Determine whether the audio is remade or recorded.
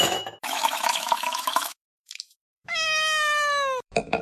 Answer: remade